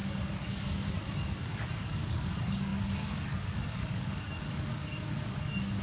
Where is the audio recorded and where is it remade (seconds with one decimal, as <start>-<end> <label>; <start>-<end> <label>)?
0.0-5.8 remade